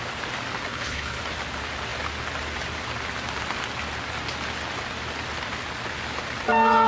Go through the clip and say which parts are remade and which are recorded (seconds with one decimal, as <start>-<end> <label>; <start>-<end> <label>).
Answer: 0.0-0.7 recorded; 0.7-1.2 remade; 1.2-6.9 recorded